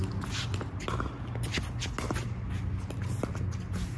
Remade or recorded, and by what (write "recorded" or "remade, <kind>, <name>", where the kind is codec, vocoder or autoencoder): recorded